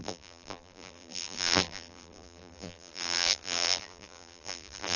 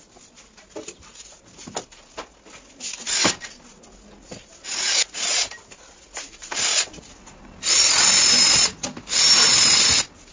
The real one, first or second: second